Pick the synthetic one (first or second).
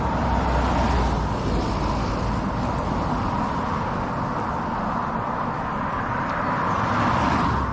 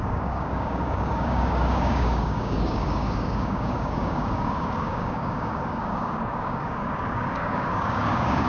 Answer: second